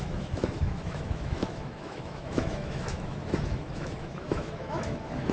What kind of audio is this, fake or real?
fake